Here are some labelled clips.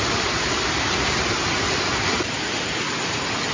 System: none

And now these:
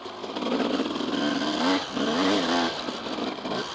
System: none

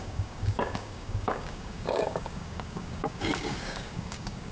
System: codec, DAC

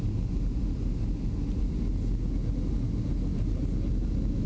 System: none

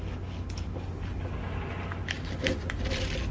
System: none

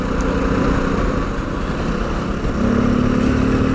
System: none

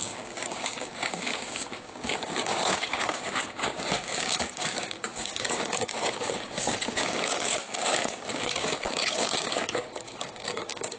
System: codec, DAC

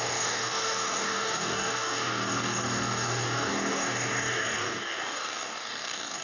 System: codec, DAC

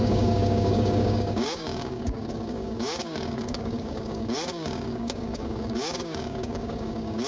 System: codec, DAC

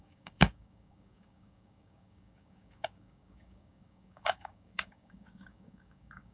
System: codec, DAC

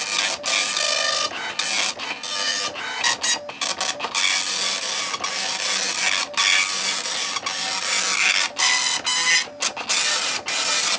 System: none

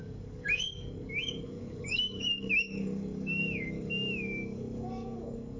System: codec, DAC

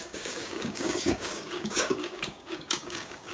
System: codec, DAC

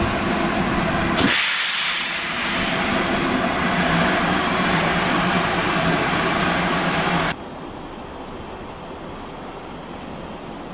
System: none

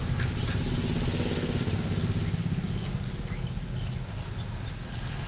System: none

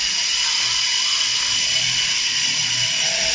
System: none